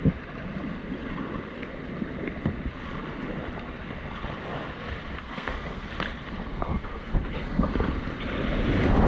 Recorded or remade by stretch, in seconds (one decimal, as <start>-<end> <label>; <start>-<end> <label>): 0.0-5.2 recorded; 5.2-5.9 remade; 5.9-6.5 recorded; 6.5-7.7 remade; 7.7-9.1 recorded